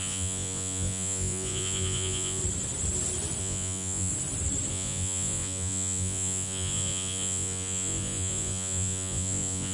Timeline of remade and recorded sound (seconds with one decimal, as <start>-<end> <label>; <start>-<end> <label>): 0.0-2.4 remade; 2.4-3.4 recorded; 3.4-4.1 remade; 4.1-4.7 recorded; 4.7-9.7 remade